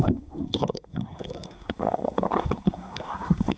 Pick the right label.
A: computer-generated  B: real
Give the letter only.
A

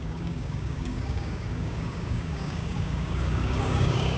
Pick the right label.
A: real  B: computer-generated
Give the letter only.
B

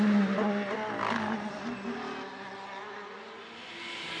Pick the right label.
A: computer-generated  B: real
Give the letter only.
B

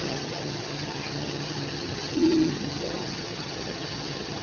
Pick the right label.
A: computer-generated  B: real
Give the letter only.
A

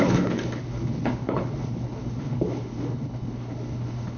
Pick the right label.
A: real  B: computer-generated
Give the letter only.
B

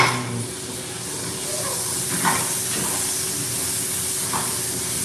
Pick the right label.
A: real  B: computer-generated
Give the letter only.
A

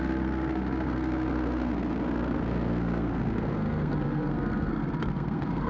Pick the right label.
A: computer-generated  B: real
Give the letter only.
A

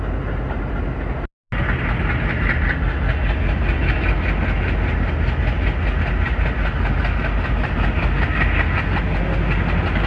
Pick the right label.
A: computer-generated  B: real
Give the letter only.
B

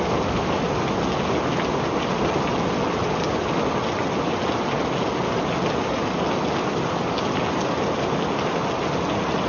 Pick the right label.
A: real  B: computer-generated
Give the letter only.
A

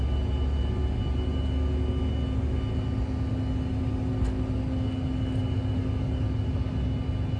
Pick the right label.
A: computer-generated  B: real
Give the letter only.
B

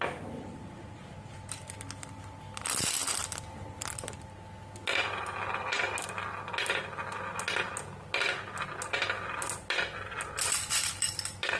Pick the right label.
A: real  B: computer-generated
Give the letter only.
A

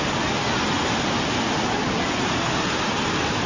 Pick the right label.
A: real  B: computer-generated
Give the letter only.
A